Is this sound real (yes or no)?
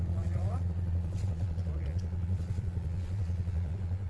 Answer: no